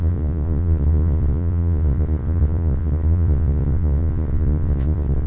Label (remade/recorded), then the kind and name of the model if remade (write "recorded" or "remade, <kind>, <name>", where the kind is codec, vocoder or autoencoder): remade, vocoder, Vocos